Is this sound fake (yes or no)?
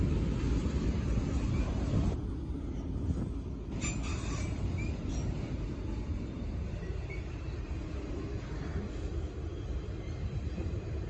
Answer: no